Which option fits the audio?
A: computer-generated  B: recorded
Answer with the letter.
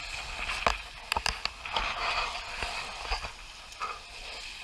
B